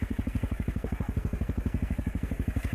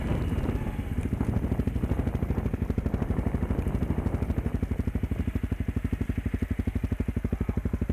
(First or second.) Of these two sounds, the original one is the second